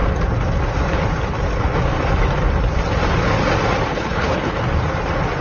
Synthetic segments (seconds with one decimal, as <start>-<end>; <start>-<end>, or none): 3.9-4.5